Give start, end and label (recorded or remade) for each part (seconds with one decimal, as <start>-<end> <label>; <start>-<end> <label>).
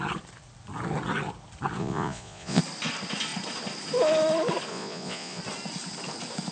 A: 0.0-1.8 recorded; 1.8-2.6 remade; 2.6-4.7 recorded; 4.7-5.4 remade; 5.4-6.5 recorded